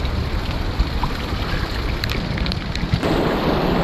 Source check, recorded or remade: recorded